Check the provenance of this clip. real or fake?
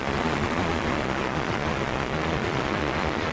fake